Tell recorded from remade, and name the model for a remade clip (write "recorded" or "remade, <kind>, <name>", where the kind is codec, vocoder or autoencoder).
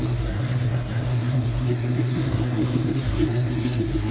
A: remade, codec, SNAC